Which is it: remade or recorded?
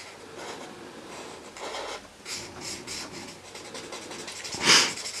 recorded